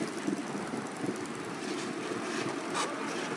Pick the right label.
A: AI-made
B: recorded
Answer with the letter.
B